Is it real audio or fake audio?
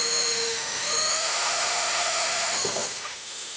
fake